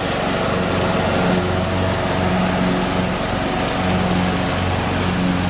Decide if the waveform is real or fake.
real